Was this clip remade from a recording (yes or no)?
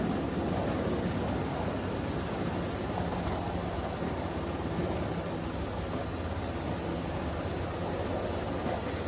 no